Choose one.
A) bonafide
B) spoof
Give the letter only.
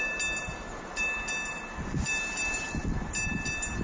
A